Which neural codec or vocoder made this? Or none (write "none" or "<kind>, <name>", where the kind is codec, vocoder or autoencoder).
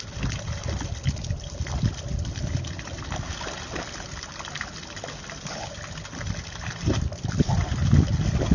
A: none